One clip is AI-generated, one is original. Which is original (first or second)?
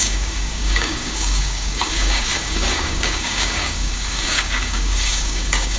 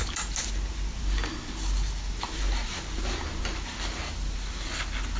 second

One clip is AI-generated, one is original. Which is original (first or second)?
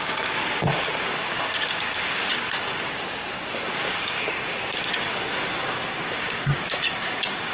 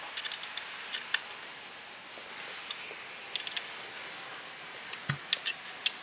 second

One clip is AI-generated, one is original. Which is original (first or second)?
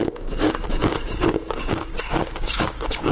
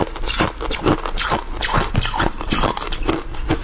second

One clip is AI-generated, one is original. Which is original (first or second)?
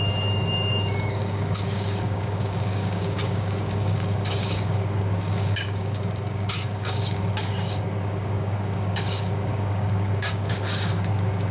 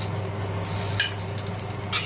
second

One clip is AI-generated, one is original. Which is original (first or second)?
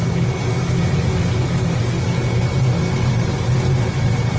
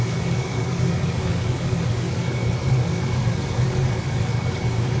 first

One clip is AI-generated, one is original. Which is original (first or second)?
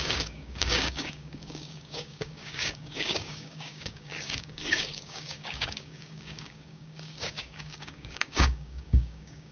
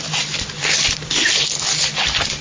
second